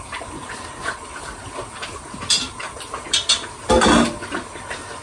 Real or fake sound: real